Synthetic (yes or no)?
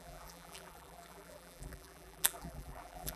yes